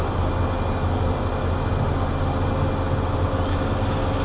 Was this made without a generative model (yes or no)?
yes